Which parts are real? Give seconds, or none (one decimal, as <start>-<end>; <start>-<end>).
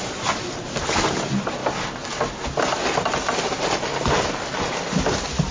1.6-3.5; 3.9-5.5